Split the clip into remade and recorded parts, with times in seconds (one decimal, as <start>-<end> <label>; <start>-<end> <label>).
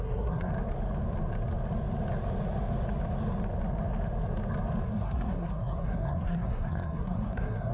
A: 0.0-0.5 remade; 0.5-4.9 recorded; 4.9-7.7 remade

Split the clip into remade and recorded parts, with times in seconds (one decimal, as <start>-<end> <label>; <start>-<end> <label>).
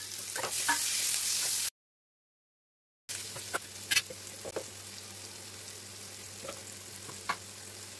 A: 0.0-8.0 recorded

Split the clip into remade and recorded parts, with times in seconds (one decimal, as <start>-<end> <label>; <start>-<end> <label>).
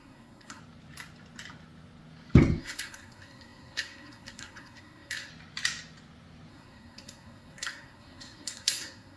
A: 0.0-0.6 remade; 0.6-2.6 recorded; 2.6-5.3 remade; 5.3-6.5 recorded; 6.5-9.2 remade